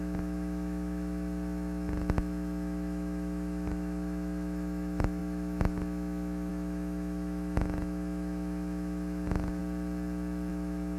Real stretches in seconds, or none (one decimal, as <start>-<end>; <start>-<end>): 9.6-10.5